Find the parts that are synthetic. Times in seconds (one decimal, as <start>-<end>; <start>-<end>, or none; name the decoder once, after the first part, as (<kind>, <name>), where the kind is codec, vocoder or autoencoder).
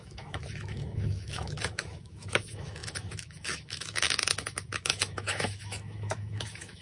0.0-6.8 (autoencoder, DAC-VAE)